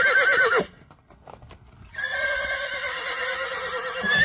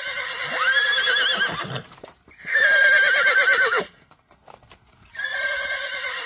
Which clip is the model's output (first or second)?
second